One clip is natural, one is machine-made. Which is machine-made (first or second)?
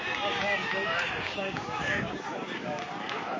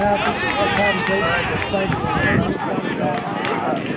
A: first